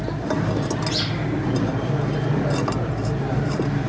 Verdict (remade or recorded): recorded